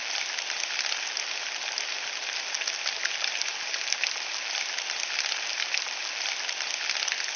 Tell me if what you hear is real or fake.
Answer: real